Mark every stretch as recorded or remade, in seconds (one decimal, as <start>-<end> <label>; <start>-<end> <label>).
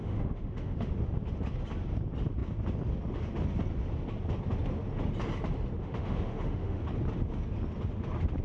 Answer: 0.0-0.9 remade; 0.9-5.8 recorded; 5.8-6.8 remade; 6.8-8.4 recorded